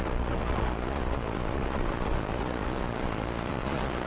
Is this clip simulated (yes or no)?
yes